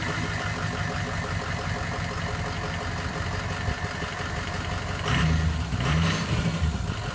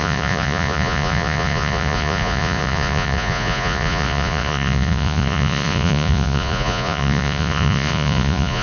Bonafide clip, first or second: first